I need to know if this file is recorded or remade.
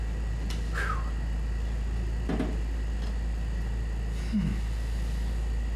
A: recorded